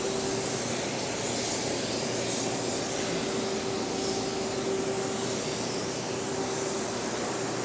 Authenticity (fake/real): real